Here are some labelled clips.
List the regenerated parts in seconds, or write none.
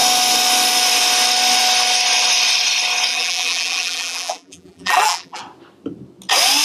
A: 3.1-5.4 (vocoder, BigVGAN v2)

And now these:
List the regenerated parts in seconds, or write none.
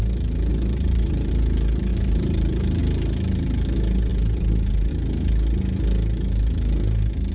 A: 0.5-1.3 (vocoder, BigVGAN v2); 1.9-2.8; 4.1-4.9